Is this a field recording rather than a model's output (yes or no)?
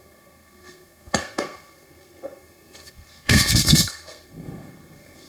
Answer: no